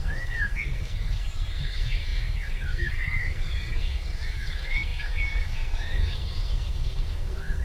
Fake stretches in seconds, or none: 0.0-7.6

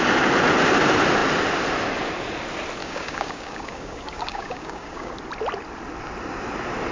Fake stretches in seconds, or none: 2.8-5.1

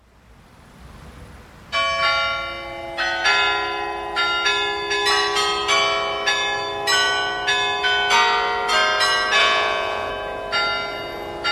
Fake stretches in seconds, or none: 9.4-10.1

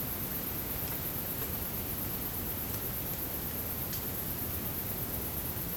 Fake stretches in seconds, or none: none

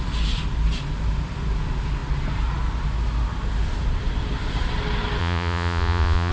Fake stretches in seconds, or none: 5.2-6.3

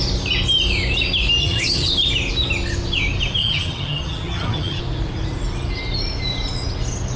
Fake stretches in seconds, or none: 1.4-1.9; 3.4-4.8

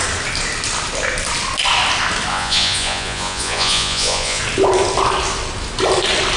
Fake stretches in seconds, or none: 2.3-4.4